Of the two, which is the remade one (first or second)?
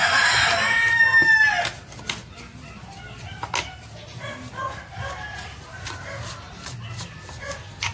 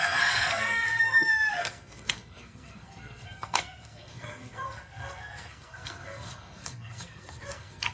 second